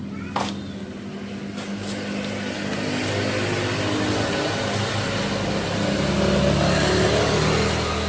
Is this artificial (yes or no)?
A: no